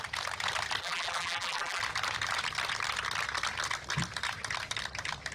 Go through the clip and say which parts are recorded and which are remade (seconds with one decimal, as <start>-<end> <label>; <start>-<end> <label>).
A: 0.0-0.8 recorded; 0.8-1.8 remade; 1.8-5.3 recorded